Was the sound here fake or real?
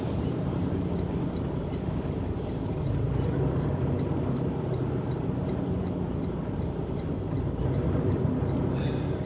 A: real